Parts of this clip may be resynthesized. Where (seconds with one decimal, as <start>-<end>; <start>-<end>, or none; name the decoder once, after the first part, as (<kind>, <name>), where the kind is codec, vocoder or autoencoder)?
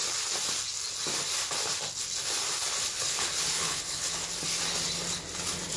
2.8-4.2 (codec, HILCodec)